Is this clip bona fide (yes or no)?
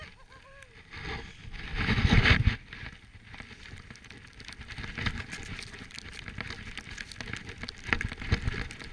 yes